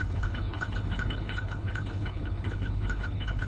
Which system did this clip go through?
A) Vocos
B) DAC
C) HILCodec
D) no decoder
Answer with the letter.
C